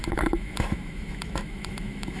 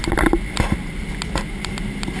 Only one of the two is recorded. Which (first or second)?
second